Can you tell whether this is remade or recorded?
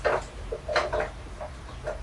recorded